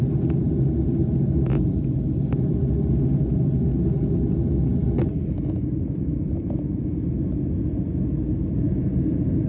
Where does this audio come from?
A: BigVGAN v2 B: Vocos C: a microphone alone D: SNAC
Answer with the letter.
C